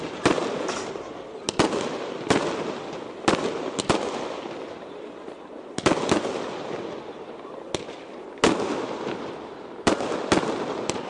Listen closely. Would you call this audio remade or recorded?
recorded